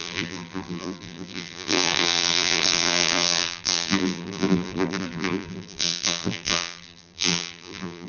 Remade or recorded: remade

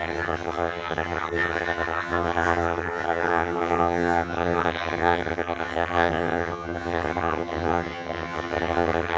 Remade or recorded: remade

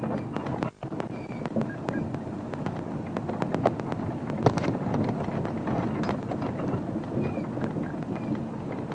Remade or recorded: recorded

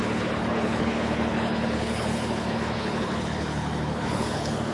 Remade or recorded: remade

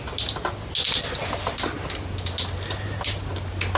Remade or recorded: recorded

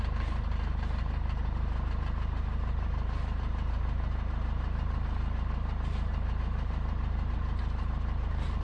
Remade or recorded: remade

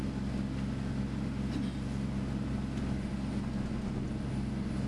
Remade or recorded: recorded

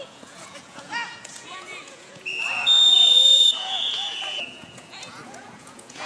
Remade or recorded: remade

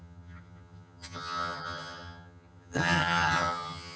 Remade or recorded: remade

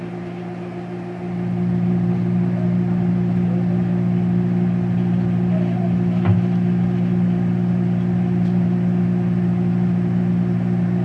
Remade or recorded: remade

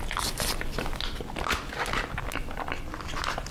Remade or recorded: recorded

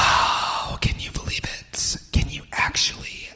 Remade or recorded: recorded